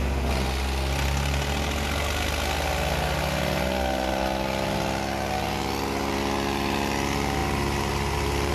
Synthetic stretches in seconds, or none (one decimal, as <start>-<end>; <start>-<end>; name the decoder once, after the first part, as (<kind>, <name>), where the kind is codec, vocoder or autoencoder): 7.4-8.5 (vocoder, BigVGAN v2)